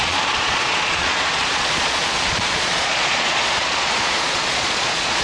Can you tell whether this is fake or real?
fake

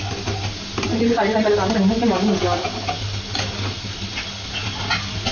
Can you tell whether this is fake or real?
real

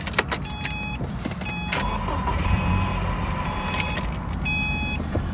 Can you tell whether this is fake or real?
real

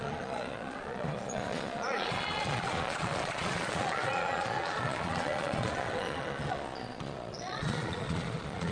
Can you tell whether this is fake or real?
fake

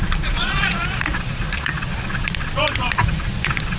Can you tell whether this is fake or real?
fake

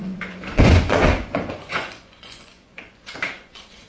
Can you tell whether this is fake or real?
fake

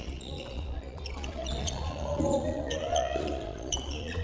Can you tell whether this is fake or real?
fake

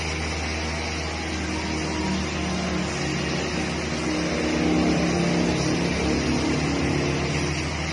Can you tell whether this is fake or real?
real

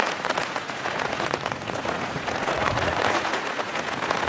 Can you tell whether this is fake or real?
fake